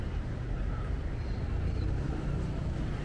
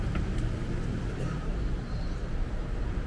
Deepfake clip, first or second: second